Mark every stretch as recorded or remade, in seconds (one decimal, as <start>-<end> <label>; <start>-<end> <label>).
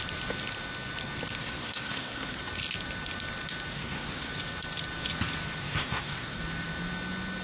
0.0-1.4 recorded; 1.4-2.4 remade; 2.4-3.7 recorded; 3.7-4.3 remade; 4.3-5.6 recorded; 5.6-6.4 remade; 6.4-7.4 recorded